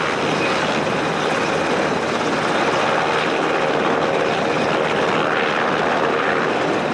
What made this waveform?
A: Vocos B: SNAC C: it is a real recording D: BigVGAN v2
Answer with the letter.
C